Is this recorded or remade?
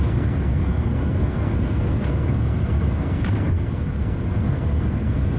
remade